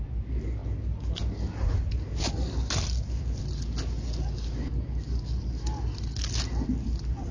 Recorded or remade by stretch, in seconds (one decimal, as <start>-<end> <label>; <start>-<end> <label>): 0.0-7.3 recorded